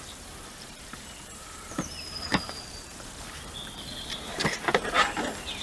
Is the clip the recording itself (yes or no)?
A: no